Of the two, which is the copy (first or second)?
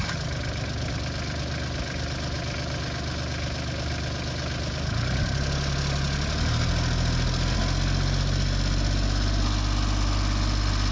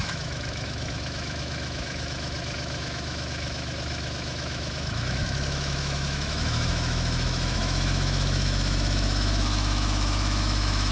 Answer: second